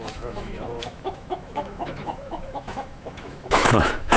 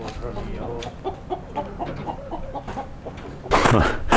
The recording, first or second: second